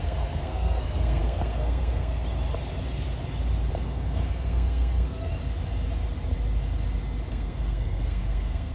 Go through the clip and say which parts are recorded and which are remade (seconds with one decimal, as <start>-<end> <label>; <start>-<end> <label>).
0.0-2.2 remade; 2.2-3.7 recorded; 3.7-5.3 remade; 5.3-7.3 recorded; 7.3-8.7 remade